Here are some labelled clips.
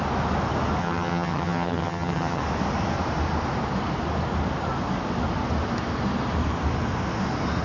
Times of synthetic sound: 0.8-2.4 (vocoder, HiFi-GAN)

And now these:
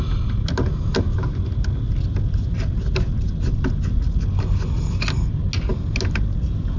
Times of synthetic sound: none

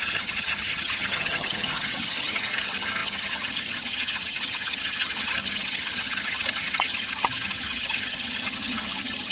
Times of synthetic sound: 0.0-9.3 (vocoder, HiFi-GAN)